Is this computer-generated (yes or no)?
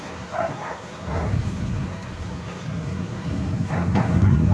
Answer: yes